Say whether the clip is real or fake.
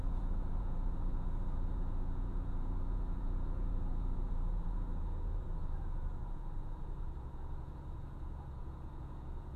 fake